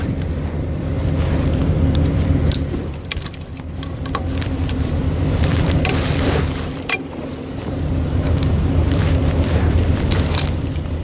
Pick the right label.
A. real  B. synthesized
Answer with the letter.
B